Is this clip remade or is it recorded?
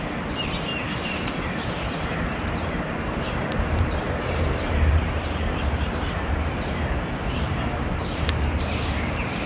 remade